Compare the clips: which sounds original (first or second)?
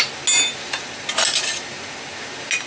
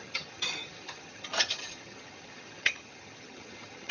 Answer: first